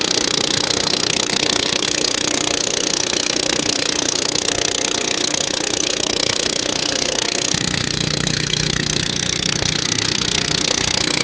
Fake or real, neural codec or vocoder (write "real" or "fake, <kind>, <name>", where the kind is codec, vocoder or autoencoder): fake, codec, SNAC